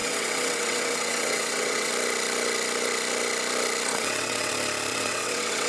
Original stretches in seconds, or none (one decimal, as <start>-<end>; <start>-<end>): 1.9-3.9; 4.5-4.9